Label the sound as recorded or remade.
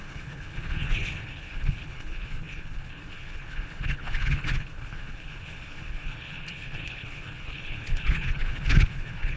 remade